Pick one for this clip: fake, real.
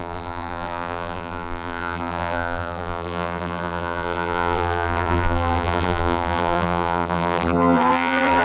fake